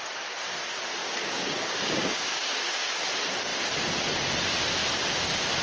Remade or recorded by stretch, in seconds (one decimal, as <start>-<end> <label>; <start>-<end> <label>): 0.0-1.0 recorded; 1.0-3.0 remade; 3.0-5.6 recorded